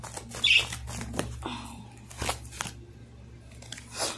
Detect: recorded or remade recorded